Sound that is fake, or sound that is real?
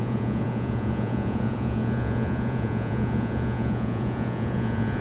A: fake